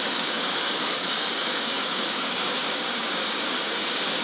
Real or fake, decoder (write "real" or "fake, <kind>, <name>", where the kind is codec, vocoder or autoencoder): fake, codec, DAC